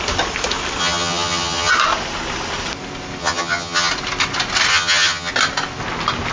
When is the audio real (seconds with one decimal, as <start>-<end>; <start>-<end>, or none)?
0.0-0.8; 1.7-3.2; 3.9-4.7; 5.3-6.3